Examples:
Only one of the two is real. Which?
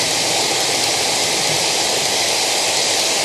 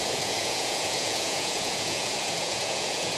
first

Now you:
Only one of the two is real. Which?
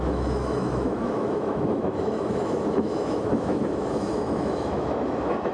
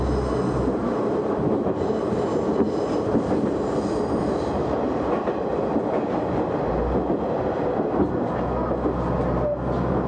second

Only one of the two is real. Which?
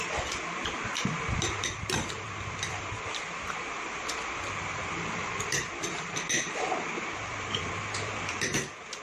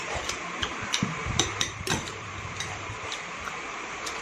first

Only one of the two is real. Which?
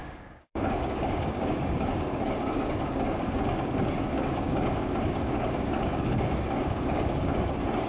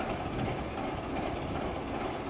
second